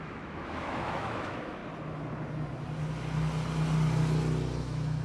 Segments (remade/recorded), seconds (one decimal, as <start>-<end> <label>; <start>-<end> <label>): 0.0-1.6 remade; 1.6-4.6 recorded; 4.6-5.0 remade